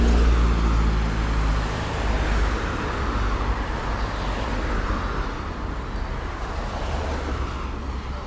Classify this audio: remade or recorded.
recorded